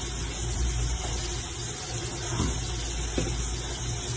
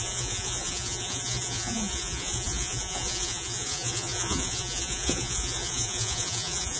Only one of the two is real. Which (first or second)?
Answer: first